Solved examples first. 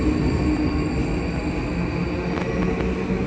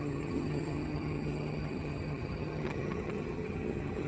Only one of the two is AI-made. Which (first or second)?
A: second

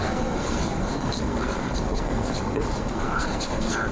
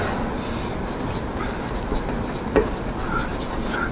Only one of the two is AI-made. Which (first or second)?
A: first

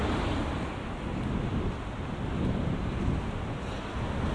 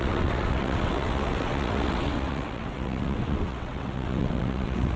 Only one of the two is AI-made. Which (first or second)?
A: second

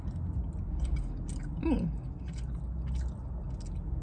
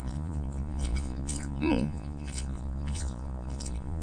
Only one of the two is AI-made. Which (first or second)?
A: second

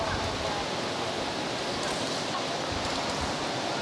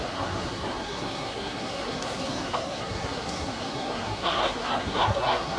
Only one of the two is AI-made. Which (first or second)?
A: second